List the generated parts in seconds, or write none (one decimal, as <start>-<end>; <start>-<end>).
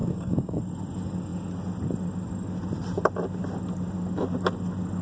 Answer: 0.0-0.6